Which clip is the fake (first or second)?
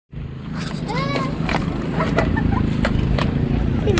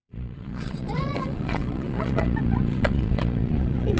second